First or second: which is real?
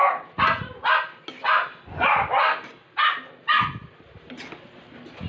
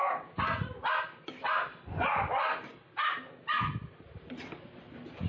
first